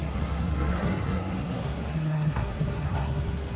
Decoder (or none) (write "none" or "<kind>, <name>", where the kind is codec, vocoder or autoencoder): codec, SNAC